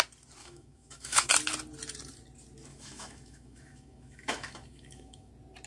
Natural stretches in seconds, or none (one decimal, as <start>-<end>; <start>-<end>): 0.0-0.4; 1.3-2.7; 5.3-5.7